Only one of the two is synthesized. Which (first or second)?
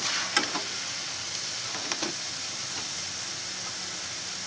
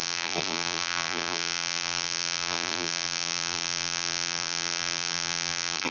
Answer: second